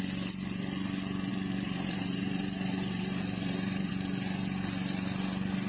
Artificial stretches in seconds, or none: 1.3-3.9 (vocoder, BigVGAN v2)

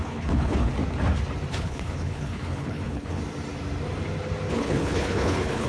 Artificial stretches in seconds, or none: 0.0-0.7 (codec, HILCodec); 1.5-3.2; 4.5-5.7

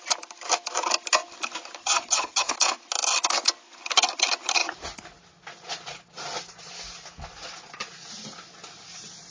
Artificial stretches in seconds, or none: 1.8-2.5 (vocoder, HiFi-GAN)

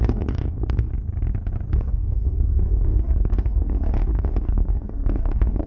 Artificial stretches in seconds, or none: 0.0-0.9 (codec, DAC); 1.7-5.7

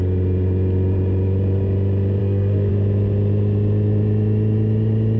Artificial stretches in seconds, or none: 2.2-2.7 (codec, SNAC)

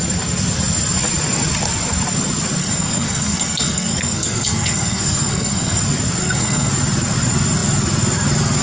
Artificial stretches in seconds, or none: 2.6-5.8 (codec, SNAC); 6.2-6.7